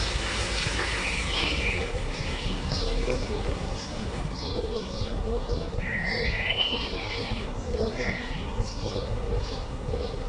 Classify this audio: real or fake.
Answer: fake